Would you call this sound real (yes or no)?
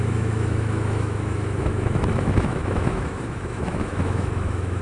no